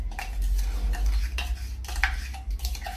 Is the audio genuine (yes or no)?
yes